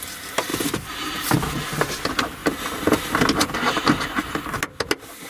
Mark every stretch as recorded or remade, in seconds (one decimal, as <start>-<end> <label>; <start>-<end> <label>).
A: 0.0-5.3 recorded